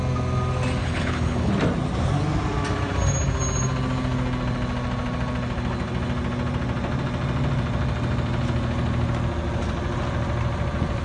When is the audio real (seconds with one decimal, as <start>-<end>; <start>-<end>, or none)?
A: 0.0-0.8; 1.5-11.0